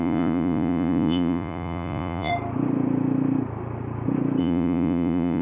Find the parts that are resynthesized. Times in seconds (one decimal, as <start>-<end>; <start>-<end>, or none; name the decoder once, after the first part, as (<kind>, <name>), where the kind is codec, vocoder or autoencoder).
0.0-2.3 (vocoder, Vocos); 4.4-5.4